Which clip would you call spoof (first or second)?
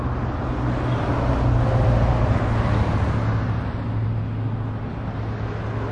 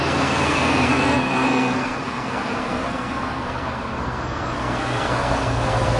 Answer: second